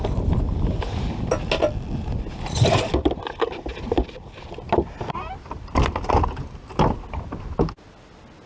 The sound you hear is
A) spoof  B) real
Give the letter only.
B